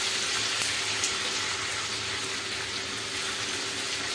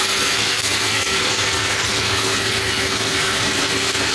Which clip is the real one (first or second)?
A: first